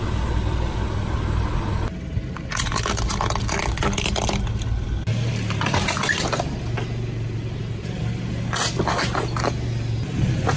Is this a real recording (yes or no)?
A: yes